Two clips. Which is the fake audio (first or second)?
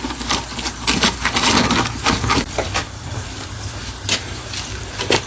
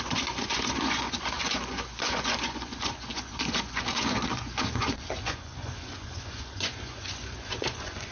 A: second